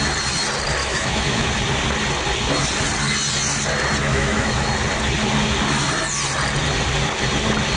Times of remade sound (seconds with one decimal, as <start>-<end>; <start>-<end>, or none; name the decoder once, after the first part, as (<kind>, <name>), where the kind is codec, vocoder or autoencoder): 0.8-1.5 (autoencoder, DAC-VAE); 4.0-4.7